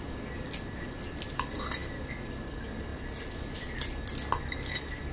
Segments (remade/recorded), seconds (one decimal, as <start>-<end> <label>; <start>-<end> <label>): 0.0-5.1 recorded